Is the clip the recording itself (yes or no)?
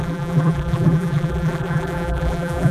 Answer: no